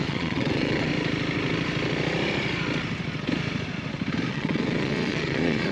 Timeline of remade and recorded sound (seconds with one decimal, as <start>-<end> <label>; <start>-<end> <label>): 0.0-0.9 remade; 0.9-4.3 recorded; 4.3-5.7 remade